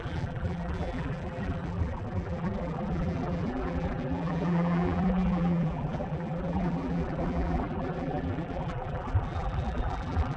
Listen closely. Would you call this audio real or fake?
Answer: fake